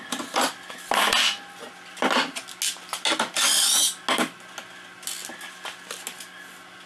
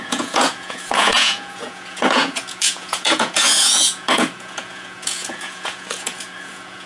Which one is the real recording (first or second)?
first